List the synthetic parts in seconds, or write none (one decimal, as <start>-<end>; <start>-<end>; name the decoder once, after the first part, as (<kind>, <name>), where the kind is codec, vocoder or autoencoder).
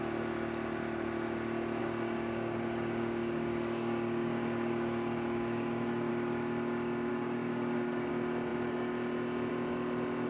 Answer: 1.8-6.1 (codec, DAC); 7.1-8.1